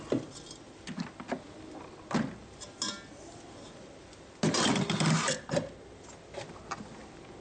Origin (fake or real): real